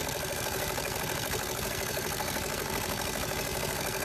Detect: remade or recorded remade